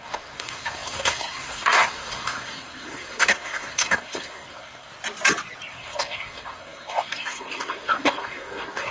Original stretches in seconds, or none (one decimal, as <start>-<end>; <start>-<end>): 4.9-5.7